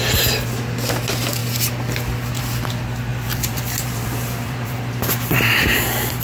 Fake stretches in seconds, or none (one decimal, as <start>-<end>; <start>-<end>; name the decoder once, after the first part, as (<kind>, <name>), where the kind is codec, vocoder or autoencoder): 3.1-4.8 (vocoder, BigVGAN v2)